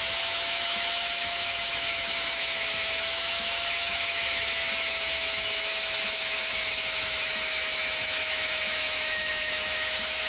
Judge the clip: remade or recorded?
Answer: remade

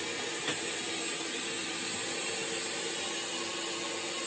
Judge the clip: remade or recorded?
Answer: recorded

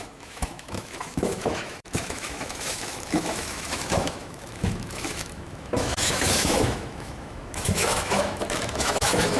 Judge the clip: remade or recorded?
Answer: remade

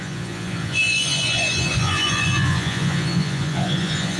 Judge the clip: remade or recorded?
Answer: remade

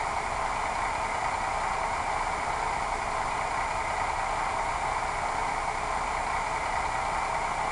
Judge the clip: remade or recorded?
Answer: recorded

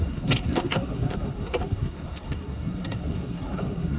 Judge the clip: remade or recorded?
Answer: remade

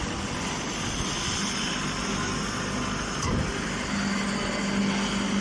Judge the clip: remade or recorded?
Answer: recorded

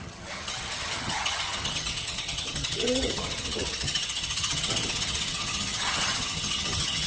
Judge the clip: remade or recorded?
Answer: remade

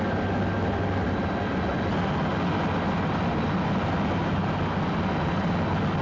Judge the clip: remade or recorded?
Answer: recorded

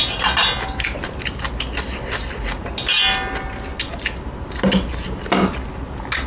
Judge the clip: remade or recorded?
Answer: recorded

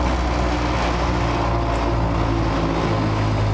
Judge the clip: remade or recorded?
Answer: recorded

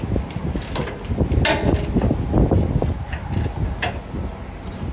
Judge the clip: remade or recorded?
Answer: recorded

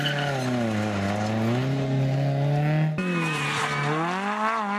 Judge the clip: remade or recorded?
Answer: recorded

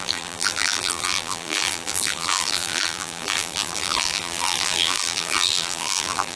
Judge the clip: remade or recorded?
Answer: remade